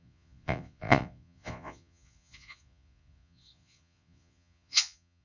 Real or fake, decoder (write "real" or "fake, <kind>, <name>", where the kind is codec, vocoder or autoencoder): fake, vocoder, Vocos